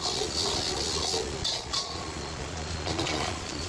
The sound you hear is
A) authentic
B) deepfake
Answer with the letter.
B